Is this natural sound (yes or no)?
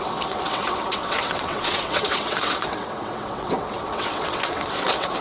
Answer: no